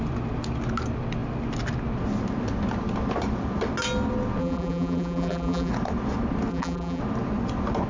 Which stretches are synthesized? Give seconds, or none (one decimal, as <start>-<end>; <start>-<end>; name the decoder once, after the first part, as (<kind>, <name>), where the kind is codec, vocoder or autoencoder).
4.4-5.7 (vocoder, BigVGAN v2); 6.5-7.0